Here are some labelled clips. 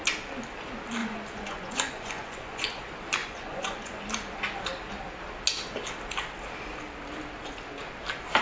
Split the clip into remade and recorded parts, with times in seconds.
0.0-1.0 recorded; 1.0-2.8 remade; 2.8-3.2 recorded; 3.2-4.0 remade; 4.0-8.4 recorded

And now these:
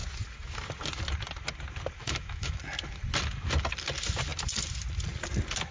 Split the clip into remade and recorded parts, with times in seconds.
0.0-2.0 recorded; 2.0-2.6 remade; 2.6-5.7 recorded

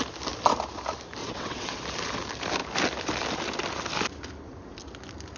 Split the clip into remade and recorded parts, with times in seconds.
0.0-1.2 recorded; 1.2-1.8 remade; 1.8-5.4 recorded

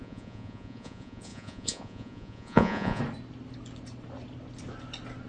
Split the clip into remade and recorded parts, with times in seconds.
0.0-3.0 remade; 3.0-5.3 recorded

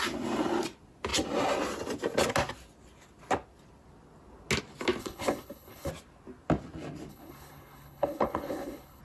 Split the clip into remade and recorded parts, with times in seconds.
0.0-5.0 recorded; 5.0-5.9 remade; 5.9-7.1 recorded; 7.1-9.0 remade

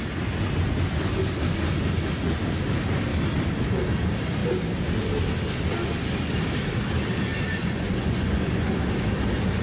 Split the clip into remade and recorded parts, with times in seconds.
0.0-7.5 recorded; 7.5-8.7 remade; 8.7-9.6 recorded

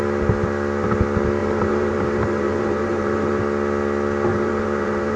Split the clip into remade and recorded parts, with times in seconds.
0.0-1.4 recorded; 1.4-3.4 remade; 3.4-4.3 recorded; 4.3-5.2 remade